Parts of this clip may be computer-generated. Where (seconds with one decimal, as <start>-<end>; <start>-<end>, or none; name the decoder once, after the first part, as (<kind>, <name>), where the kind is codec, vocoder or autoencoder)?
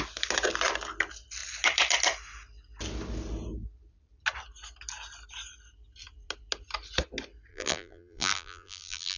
7.5-9.2 (vocoder, BigVGAN v2)